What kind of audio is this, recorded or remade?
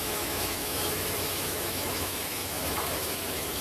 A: remade